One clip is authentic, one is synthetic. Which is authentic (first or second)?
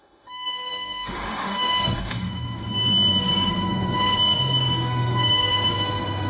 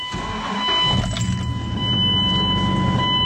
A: second